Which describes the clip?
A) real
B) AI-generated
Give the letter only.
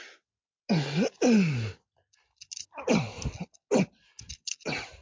A